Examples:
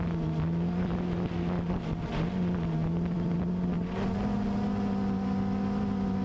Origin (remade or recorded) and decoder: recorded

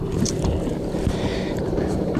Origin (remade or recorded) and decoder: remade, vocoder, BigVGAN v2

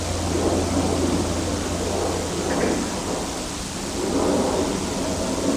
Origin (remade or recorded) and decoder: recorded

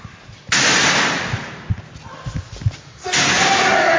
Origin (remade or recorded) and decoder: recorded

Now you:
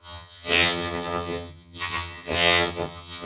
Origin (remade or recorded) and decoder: remade, vocoder, HiFi-GAN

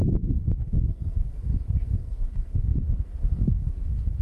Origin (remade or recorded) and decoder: remade, codec, SNAC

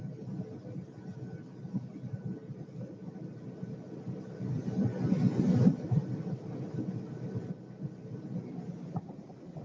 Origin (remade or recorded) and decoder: recorded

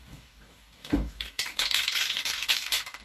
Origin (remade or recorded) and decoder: remade, codec, DAC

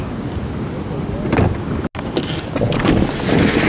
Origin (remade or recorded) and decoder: recorded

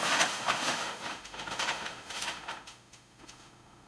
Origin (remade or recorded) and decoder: remade, autoencoder, DAC-VAE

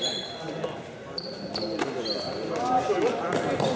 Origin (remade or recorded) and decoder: recorded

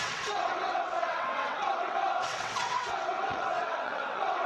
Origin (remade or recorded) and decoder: remade, vocoder, WaveNeXt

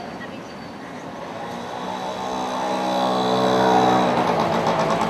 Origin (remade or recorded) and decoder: recorded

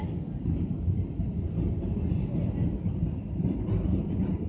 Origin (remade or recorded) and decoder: recorded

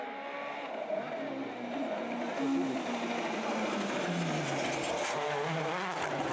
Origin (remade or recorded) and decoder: recorded